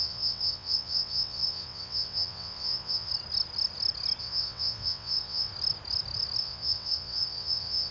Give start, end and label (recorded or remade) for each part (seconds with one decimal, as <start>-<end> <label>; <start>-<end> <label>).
0.0-3.1 remade; 3.1-4.2 recorded; 4.2-5.5 remade; 5.5-6.4 recorded; 6.4-7.9 remade